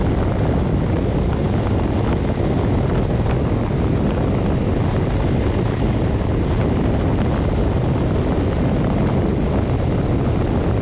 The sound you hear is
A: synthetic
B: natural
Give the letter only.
B